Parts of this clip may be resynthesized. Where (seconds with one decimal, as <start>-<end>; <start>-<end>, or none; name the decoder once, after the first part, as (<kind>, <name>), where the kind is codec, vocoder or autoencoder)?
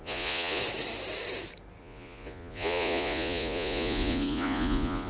0.0-0.6 (vocoder, Vocos); 1.8-5.1